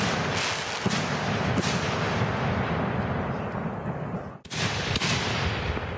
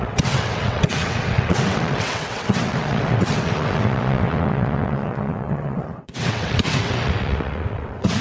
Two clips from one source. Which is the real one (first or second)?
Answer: first